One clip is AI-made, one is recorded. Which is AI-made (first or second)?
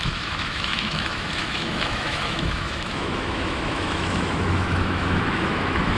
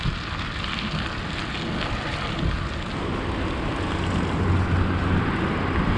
first